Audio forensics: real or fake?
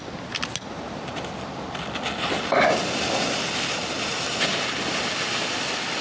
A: real